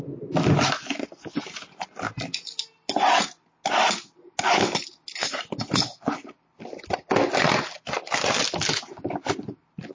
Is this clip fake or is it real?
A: real